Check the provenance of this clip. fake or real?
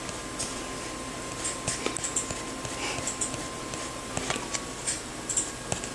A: real